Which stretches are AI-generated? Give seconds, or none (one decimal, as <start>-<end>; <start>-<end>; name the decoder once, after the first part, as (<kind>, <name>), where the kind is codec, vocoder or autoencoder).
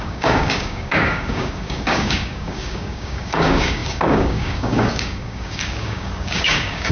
0.0-6.9 (codec, DAC)